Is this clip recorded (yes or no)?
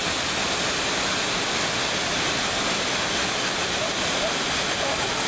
yes